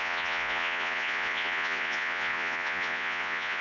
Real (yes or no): no